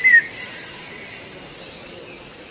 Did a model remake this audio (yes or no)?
no